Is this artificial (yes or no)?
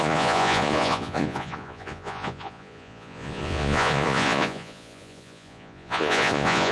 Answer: yes